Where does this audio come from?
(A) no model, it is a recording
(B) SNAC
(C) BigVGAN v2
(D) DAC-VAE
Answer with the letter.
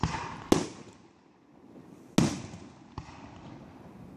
A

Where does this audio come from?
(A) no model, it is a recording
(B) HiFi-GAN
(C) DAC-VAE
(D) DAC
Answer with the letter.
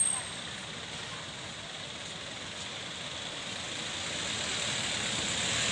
A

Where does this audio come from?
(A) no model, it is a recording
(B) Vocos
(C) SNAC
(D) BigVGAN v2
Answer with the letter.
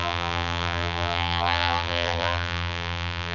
D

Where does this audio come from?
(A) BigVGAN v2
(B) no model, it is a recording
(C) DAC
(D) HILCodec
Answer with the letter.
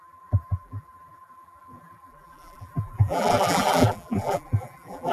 A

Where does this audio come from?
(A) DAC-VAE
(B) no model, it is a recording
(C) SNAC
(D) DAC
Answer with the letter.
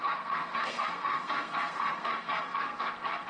C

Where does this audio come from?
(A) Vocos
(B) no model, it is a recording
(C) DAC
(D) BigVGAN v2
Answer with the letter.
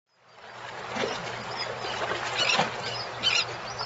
B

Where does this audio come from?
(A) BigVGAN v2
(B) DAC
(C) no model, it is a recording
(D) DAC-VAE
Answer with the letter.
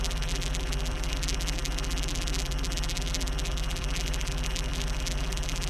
A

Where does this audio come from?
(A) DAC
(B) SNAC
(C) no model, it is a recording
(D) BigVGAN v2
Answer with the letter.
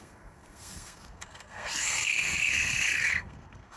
B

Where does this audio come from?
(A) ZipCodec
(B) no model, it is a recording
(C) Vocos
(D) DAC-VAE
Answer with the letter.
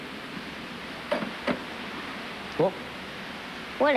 B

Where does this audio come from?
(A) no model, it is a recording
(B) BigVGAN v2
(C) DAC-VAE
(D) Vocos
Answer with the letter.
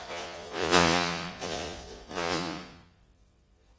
D